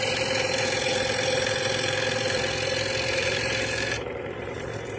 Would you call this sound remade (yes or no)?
yes